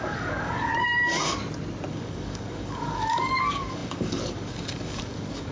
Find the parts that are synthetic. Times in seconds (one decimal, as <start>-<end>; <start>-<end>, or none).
0.0-0.7; 1.9-5.5